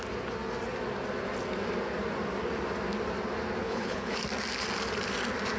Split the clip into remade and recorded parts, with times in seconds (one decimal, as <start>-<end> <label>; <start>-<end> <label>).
0.0-3.6 recorded; 3.6-4.2 remade; 4.2-5.6 recorded